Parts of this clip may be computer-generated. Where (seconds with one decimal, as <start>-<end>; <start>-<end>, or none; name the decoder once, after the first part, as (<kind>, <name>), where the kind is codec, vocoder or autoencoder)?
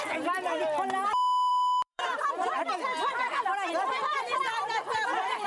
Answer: 1.5-2.3 (vocoder, BigVGAN v2); 4.1-4.7